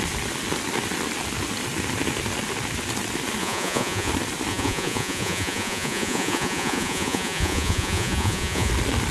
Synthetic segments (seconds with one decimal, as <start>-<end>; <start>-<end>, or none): 3.4-4.1; 4.5-8.7